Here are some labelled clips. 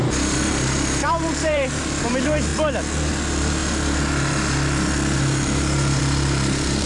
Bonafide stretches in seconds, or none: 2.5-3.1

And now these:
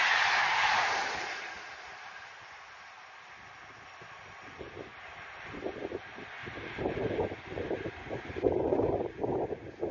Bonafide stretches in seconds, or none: 0.0-0.4; 2.3-4.9; 5.5-6.4; 9.2-9.9

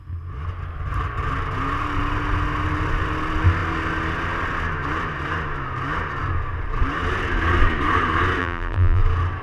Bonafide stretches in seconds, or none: 0.0-8.4; 9.0-9.4

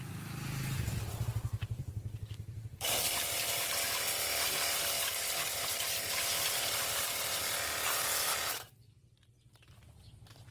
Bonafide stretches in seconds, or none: 7.4-9.6

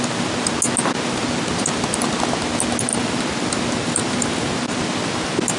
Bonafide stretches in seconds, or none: 0.0-2.9; 4.8-5.6

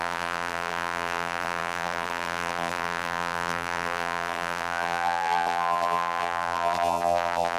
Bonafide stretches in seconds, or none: none